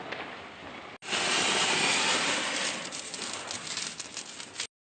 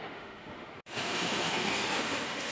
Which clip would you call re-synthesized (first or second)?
second